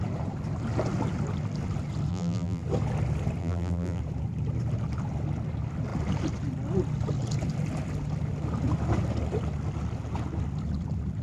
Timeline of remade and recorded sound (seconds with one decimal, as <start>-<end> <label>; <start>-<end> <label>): 0.0-2.1 recorded; 2.1-2.6 remade; 2.6-3.4 recorded; 3.4-4.0 remade; 4.0-11.2 recorded